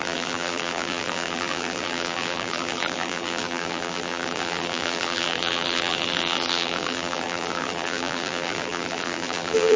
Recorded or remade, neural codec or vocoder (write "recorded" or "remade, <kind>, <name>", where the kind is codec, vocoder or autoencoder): remade, vocoder, BigVGAN v2